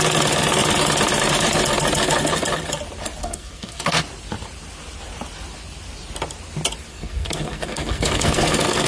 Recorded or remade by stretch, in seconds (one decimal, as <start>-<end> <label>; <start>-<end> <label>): 0.0-3.2 recorded; 3.2-4.0 remade; 4.0-6.9 recorded; 6.9-8.9 remade

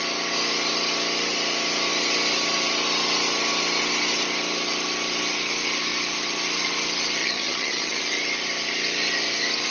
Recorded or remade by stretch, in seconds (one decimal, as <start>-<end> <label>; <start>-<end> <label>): 0.0-7.2 recorded; 7.2-8.0 remade; 8.0-9.7 recorded

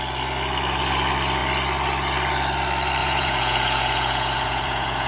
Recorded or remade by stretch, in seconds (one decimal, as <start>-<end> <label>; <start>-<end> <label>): 0.0-3.0 recorded; 3.0-5.1 remade

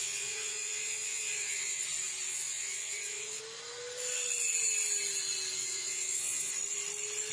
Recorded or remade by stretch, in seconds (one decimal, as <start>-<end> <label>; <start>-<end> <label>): 0.0-1.8 remade; 1.8-2.3 recorded; 2.3-3.4 remade; 3.4-5.6 recorded; 5.6-6.5 remade; 6.5-7.3 recorded

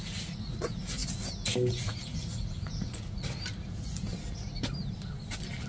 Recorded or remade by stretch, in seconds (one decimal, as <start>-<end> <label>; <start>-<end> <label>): 0.0-1.0 remade; 1.0-1.7 recorded; 1.7-4.1 remade; 4.1-5.7 recorded